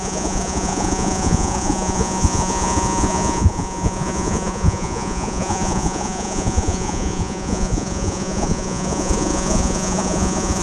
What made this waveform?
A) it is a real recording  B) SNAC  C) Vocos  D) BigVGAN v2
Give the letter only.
C